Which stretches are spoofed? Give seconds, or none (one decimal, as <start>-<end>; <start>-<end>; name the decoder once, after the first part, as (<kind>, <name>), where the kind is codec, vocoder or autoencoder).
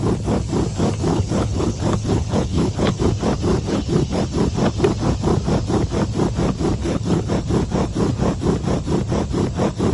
1.1-3.0 (codec, HILCodec); 3.5-4.2; 6.8-7.3